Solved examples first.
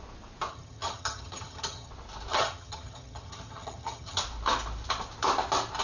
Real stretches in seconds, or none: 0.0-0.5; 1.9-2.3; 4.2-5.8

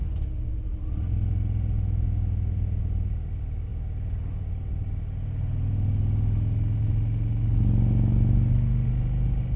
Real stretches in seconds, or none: 0.0-9.6

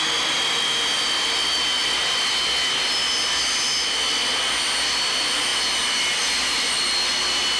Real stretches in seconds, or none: 0.0-7.6

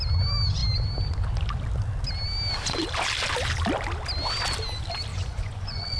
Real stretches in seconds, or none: 0.0-5.1

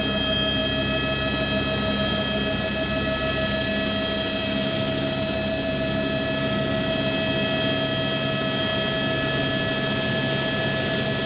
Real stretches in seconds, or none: 0.0-11.3